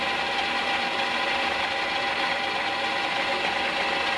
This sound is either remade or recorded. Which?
recorded